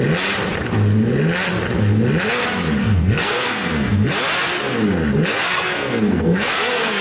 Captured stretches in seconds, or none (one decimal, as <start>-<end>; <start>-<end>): 0.0-2.8; 4.1-5.3